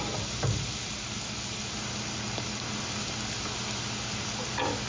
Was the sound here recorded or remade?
recorded